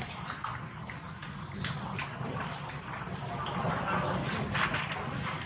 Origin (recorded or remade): recorded